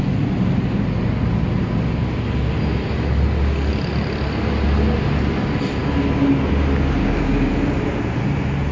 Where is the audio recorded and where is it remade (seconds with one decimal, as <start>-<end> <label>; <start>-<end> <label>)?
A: 0.0-7.0 recorded; 7.0-7.5 remade; 7.5-8.7 recorded